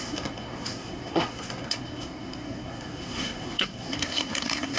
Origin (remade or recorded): remade